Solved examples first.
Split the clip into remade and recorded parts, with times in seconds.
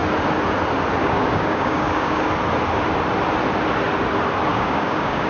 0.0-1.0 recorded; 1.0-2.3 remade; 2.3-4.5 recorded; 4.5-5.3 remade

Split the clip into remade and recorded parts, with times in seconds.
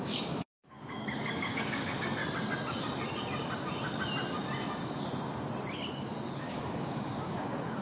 0.0-2.2 remade; 2.2-6.4 recorded; 6.4-7.8 remade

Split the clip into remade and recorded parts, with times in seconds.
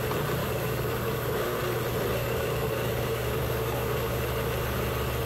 0.0-0.4 recorded; 0.4-1.6 remade; 1.6-2.2 recorded; 2.2-4.2 remade; 4.2-5.3 recorded